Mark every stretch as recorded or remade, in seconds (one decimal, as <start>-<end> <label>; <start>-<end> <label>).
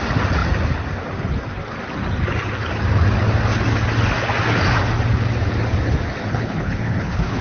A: 0.0-6.3 recorded; 6.3-7.4 remade